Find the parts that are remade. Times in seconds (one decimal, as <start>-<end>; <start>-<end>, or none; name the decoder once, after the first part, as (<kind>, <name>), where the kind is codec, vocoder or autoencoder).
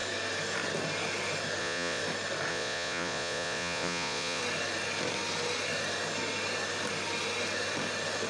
1.6-2.0 (vocoder, Vocos); 2.5-4.4